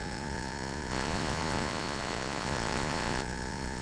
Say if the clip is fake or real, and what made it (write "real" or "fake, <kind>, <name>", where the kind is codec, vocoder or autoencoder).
fake, vocoder, Vocos